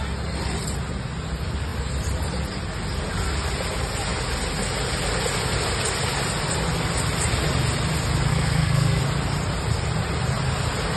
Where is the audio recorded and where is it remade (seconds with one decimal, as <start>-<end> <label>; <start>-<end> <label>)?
0.0-8.3 recorded; 8.3-9.0 remade; 9.0-11.0 recorded